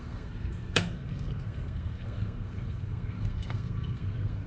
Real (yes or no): no